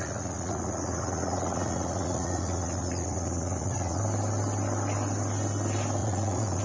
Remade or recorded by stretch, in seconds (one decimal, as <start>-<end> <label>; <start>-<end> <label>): 0.0-4.0 remade; 4.0-6.0 recorded; 6.0-6.6 remade